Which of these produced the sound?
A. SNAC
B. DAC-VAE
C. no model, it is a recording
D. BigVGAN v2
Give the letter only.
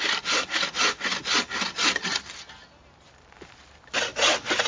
C